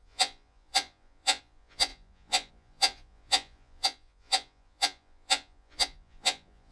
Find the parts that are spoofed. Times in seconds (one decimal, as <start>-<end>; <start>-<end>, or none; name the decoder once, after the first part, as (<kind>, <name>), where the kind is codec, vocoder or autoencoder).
0.0-6.7 (vocoder, Vocos)